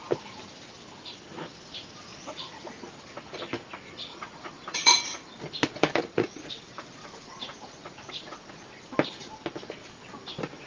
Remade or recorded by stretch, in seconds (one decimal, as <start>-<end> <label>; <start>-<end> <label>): 0.0-2.1 recorded; 2.1-2.7 remade; 2.7-4.1 recorded; 4.1-5.0 remade; 5.0-6.0 recorded; 6.0-6.5 remade; 6.5-7.0 recorded; 7.0-8.5 remade; 8.5-10.7 recorded